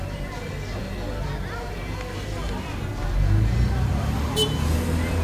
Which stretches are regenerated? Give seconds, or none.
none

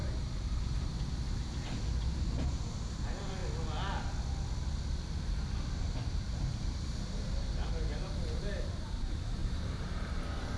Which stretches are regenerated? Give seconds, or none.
0.0-3.4 (vocoder, BigVGAN v2); 6.0-10.6

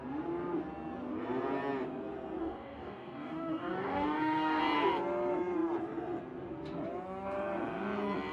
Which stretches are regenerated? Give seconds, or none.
2.4-4.6 (codec, DAC)

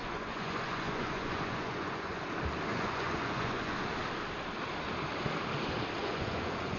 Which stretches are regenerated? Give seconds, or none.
0.0-2.2 (vocoder, Vocos); 2.7-3.7; 6.0-6.8

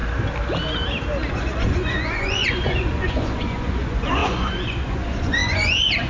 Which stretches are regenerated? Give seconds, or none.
1.3-6.1 (vocoder, Vocos)

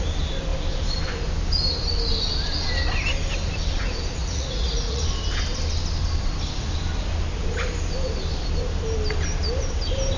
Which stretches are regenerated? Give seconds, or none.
4.2-5.0 (vocoder, Vocos)

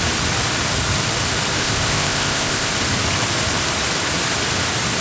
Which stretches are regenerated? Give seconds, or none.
1.6-2.7 (codec, ZipCodec)

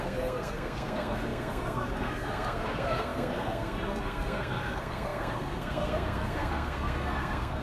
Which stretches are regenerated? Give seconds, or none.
0.0-7.6 (codec, SNAC)